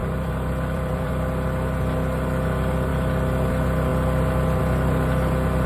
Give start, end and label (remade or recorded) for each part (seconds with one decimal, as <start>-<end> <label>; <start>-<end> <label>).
0.0-1.1 remade; 1.1-5.7 recorded